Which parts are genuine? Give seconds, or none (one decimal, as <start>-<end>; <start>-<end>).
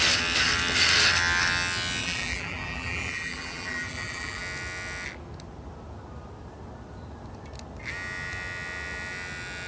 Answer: 0.0-2.0; 4.4-9.7